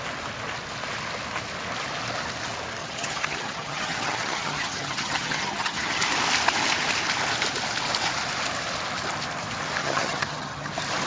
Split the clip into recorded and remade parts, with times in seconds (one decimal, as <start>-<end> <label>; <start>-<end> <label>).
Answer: 0.0-2.8 recorded; 2.8-6.0 remade; 6.0-9.8 recorded; 9.8-10.7 remade; 10.7-11.1 recorded